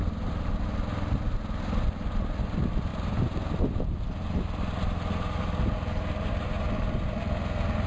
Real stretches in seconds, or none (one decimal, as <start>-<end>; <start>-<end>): 0.0-7.9